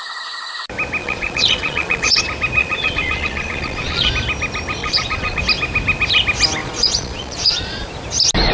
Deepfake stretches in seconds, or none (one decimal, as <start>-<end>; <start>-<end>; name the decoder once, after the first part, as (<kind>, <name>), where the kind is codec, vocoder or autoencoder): 1.0-2.2 (vocoder, Vocos); 2.6-4.1; 4.8-5.4; 6.6-7.9